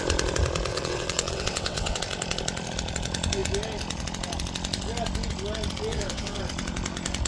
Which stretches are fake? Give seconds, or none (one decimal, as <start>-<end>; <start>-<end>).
0.7-2.0; 5.9-6.4